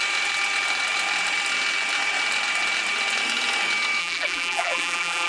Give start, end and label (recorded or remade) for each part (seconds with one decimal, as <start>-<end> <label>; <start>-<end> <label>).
0.0-4.0 recorded; 4.0-5.3 remade